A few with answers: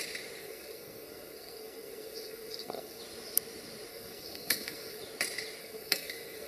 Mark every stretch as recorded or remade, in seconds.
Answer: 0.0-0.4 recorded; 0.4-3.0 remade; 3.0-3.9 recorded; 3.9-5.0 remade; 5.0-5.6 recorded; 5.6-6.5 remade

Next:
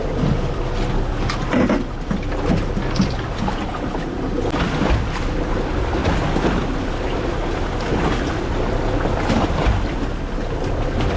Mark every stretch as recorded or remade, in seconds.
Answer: 0.0-11.2 recorded

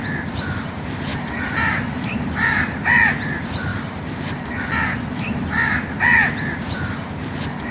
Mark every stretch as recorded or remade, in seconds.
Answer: 0.0-1.1 recorded; 1.1-3.1 remade; 3.1-3.7 recorded; 3.7-4.7 remade; 4.7-7.7 recorded

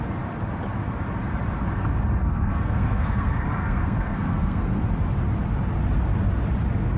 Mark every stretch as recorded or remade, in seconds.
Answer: 0.0-2.2 recorded; 2.2-4.8 remade; 4.8-7.0 recorded

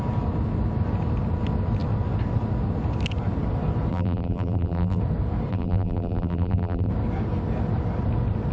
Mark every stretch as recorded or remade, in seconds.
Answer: 0.0-3.9 recorded; 3.9-5.0 remade; 5.0-5.5 recorded; 5.5-6.9 remade; 6.9-8.5 recorded

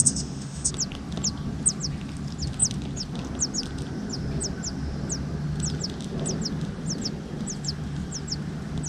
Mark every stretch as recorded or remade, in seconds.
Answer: 0.0-0.7 remade; 0.7-8.9 recorded